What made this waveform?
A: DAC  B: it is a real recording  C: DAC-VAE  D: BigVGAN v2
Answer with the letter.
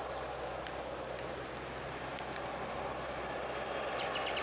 B